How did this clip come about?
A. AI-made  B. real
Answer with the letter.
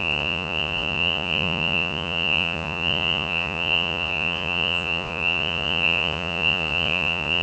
A